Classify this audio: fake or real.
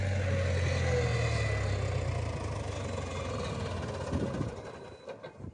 real